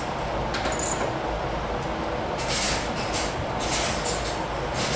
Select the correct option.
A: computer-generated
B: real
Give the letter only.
B